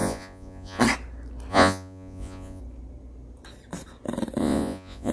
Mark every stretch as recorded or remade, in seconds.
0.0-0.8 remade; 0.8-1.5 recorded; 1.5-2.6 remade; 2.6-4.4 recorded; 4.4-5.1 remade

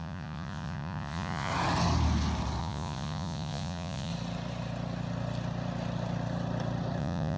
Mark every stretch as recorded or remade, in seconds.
0.0-1.5 remade; 1.5-2.6 recorded; 2.6-4.1 remade; 4.1-7.0 recorded; 7.0-7.4 remade

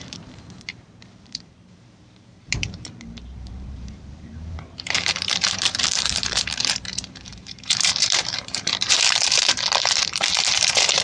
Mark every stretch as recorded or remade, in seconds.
0.0-11.0 remade